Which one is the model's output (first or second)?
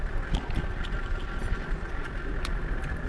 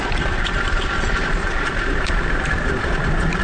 second